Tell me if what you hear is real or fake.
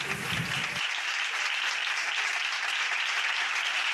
real